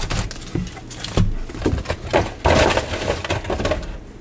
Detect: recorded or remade recorded